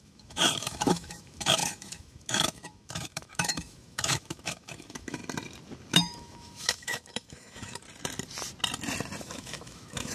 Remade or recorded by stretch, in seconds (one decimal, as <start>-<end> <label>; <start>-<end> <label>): 0.0-5.2 remade; 5.2-5.9 recorded; 5.9-7.8 remade; 7.8-9.2 recorded; 9.2-10.1 remade